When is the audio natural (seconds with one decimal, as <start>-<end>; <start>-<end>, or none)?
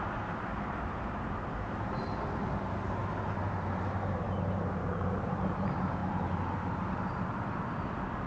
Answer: 6.0-8.3